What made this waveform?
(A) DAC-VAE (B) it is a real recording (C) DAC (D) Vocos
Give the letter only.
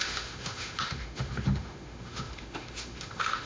A